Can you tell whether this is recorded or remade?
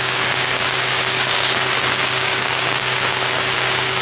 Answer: remade